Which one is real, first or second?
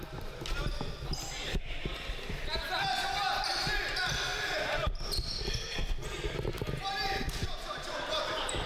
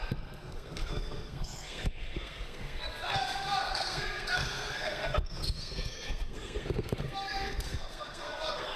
first